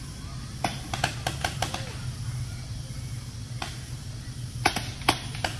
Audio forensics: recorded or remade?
recorded